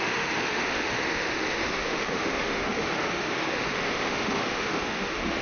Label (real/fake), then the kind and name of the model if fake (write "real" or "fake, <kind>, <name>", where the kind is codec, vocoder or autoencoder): fake, autoencoder, DAC-VAE